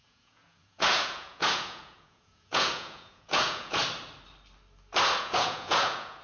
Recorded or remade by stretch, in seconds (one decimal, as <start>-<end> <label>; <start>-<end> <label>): 0.0-3.8 remade; 3.8-5.2 recorded; 5.2-6.2 remade